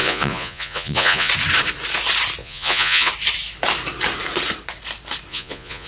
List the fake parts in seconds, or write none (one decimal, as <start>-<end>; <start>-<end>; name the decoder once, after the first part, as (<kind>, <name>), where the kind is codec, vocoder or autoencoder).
0.0-1.3 (vocoder, Vocos); 2.4-3.1; 5.3-5.9